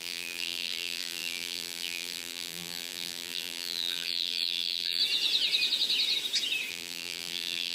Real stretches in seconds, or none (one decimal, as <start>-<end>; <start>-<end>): 5.0-6.7